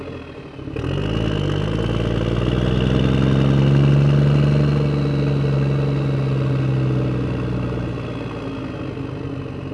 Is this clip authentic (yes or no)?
yes